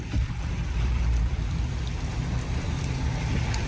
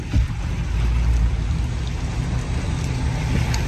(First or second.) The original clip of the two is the second